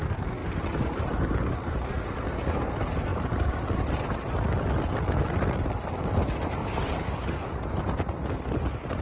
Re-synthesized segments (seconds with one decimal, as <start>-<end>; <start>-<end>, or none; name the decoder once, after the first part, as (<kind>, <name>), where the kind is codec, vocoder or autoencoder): 0.4-1.9 (vocoder, BigVGAN v2); 3.1-4.3; 6.6-8.0